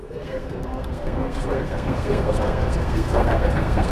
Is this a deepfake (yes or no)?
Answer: yes